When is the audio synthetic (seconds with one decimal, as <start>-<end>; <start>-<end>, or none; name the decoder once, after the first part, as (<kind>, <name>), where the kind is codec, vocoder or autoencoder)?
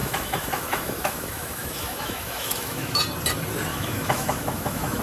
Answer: 0.0-3.0 (autoencoder, DAC-VAE); 3.7-5.0